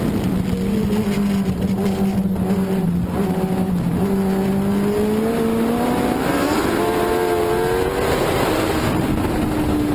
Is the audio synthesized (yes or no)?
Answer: no